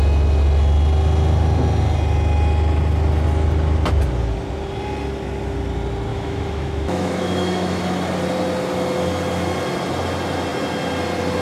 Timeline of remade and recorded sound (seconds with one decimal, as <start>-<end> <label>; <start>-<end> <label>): 0.0-6.1 recorded; 6.1-7.8 remade; 7.8-11.4 recorded

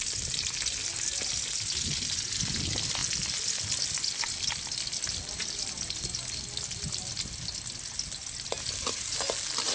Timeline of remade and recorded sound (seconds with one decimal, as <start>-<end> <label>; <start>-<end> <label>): 0.0-9.7 recorded

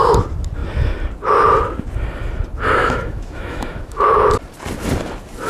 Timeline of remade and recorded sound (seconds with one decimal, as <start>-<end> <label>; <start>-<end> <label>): 0.0-2.8 recorded; 2.8-4.1 remade; 4.1-5.5 recorded

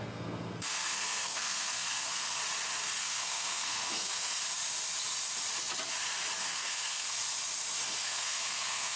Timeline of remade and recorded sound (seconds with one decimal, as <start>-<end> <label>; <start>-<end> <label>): 0.0-2.4 remade; 2.4-3.0 recorded; 3.0-4.4 remade; 4.4-6.4 recorded; 6.4-7.2 remade; 7.2-8.0 recorded; 8.0-9.0 remade

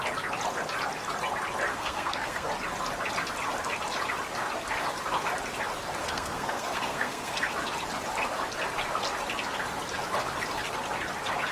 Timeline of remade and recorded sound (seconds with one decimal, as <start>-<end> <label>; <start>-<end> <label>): 0.0-1.7 recorded; 1.7-2.5 remade; 2.5-6.0 recorded; 6.0-7.5 remade; 7.5-11.5 recorded